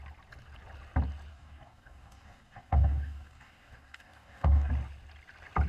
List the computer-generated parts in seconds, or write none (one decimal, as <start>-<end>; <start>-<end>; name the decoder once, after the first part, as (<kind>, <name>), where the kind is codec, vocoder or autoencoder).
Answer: 1.3-4.7 (codec, DAC)